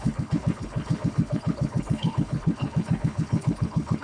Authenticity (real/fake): fake